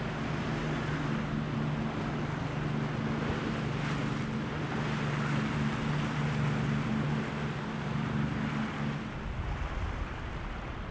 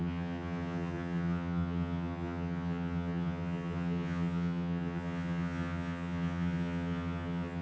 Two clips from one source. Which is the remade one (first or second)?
second